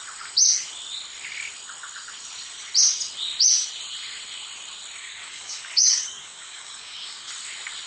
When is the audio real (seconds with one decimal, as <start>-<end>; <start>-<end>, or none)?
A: 0.0-5.0; 7.3-7.9